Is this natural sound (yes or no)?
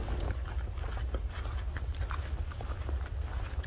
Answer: yes